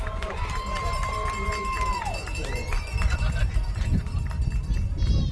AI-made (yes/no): yes